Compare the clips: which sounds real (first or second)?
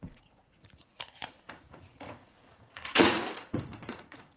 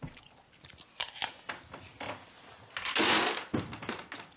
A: second